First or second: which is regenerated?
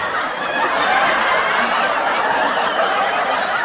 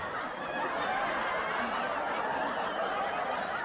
first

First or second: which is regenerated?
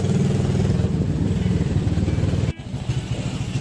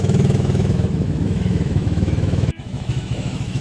second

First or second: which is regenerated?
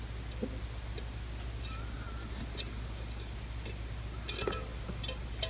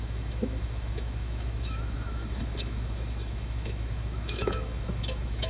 second